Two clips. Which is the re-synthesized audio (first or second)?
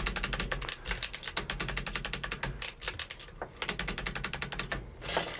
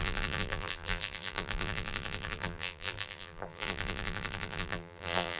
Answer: second